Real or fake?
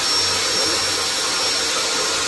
real